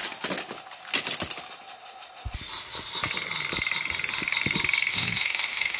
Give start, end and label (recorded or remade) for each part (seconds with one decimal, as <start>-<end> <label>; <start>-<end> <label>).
0.0-4.9 recorded; 4.9-5.8 remade